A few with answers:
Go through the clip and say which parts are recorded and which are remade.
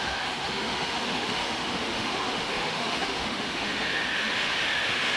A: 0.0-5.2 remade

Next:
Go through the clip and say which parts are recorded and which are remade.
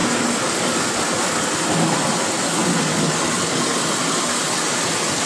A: 0.0-5.3 recorded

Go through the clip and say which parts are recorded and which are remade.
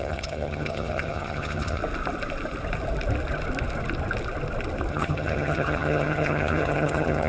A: 0.0-1.8 remade; 1.8-4.9 recorded; 4.9-7.3 remade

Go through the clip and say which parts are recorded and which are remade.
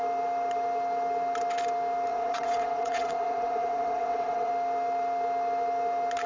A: 0.0-2.1 recorded; 2.1-4.5 remade; 4.5-6.3 recorded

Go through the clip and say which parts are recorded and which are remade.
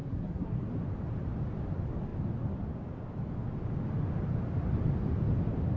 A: 0.0-0.6 remade; 0.6-5.8 recorded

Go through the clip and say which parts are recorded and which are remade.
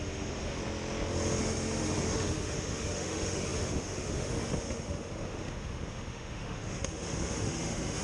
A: 0.0-0.6 remade; 0.6-1.4 recorded; 1.4-8.0 remade